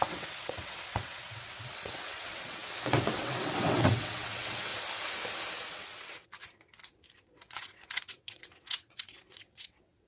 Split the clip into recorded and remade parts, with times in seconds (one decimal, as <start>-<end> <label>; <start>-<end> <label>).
0.0-4.7 remade; 4.7-5.7 recorded; 5.7-6.3 remade; 6.3-7.3 recorded; 7.3-10.1 remade